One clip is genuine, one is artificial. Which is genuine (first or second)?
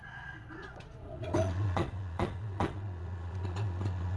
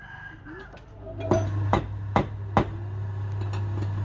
second